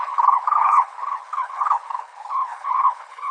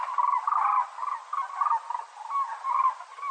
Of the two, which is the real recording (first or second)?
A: second